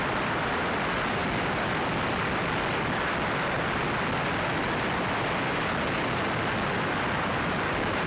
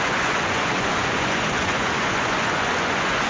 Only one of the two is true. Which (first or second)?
first